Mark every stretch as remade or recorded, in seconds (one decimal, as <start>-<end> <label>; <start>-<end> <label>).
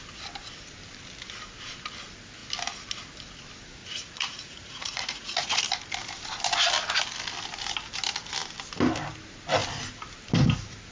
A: 0.0-3.8 recorded; 3.8-5.6 remade; 5.6-10.9 recorded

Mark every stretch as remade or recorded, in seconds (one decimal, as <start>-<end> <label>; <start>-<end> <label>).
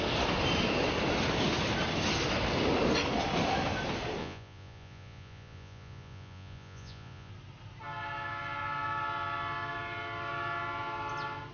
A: 0.0-4.2 recorded; 4.2-7.3 remade; 7.3-11.5 recorded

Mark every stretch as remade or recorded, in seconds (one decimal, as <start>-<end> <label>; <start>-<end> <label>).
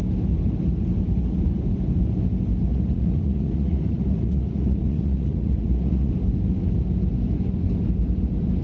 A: 0.0-2.7 recorded; 2.7-6.1 remade; 6.1-8.6 recorded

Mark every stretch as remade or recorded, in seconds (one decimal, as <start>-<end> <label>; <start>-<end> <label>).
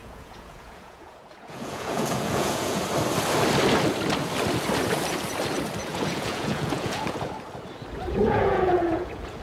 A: 0.0-2.8 remade; 2.8-5.9 recorded; 5.9-7.3 remade; 7.3-8.2 recorded; 8.2-9.4 remade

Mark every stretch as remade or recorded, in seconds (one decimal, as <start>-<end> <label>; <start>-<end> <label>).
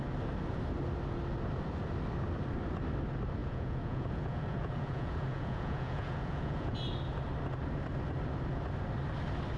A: 0.0-3.4 recorded; 3.4-6.8 remade; 6.8-9.6 recorded